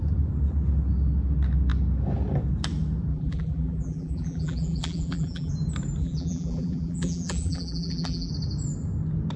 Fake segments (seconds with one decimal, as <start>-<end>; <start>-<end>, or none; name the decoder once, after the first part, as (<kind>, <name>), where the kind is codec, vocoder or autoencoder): 3.1-5.5 (vocoder, BigVGAN v2); 6.0-8.3